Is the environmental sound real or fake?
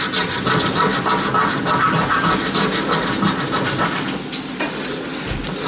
real